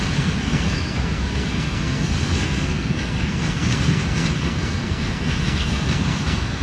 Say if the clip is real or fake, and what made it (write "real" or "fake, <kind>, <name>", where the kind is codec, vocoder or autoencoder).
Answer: fake, codec, SNAC